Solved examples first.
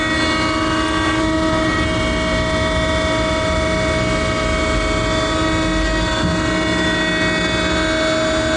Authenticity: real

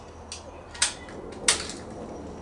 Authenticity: real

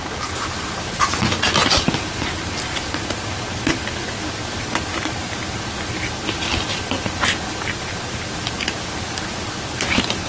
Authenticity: real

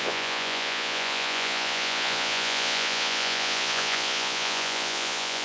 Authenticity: fake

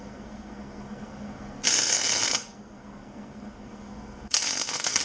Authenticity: fake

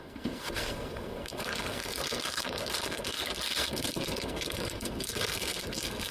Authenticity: fake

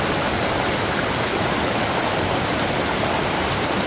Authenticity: real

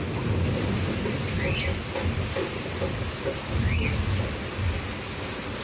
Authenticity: real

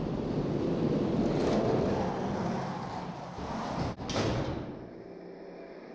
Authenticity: real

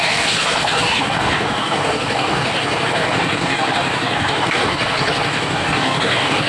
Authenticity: fake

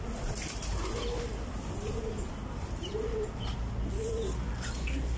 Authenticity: real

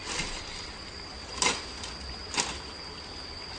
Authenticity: real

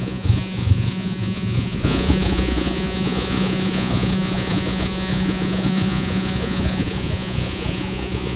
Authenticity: fake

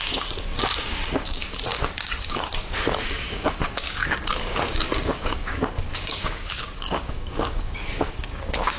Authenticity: fake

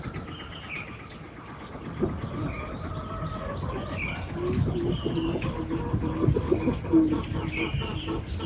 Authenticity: real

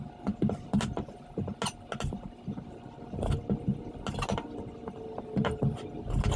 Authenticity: real